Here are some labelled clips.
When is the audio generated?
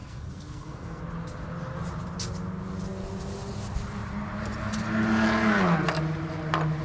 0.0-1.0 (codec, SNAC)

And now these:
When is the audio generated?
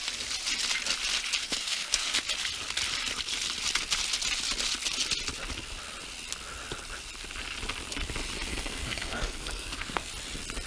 1.4-2.2 (codec, SNAC); 8.5-10.1